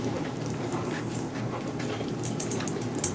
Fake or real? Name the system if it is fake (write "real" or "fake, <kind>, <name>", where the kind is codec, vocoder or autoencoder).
real